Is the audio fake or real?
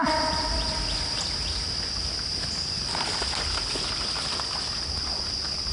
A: real